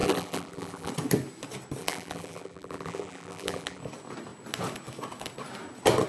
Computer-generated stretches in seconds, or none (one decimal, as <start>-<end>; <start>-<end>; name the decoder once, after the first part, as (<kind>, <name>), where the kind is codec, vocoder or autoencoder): 0.0-0.9 (vocoder, BigVGAN v2); 1.8-3.8